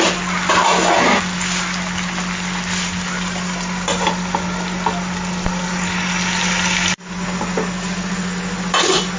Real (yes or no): yes